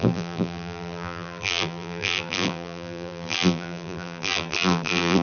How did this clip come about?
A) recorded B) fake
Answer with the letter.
B